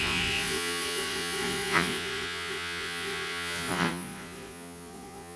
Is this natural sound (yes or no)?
no